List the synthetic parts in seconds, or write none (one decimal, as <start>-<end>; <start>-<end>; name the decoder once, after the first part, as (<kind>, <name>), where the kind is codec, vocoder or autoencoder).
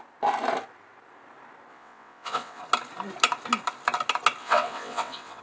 1.7-2.6 (vocoder, WaveNeXt); 4.4-5.4